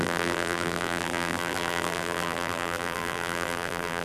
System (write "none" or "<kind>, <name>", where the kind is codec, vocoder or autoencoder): vocoder, BigVGAN v2